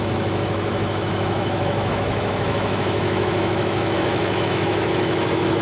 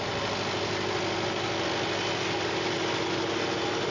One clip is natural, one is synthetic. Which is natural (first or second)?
second